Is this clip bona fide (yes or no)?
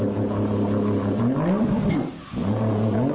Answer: yes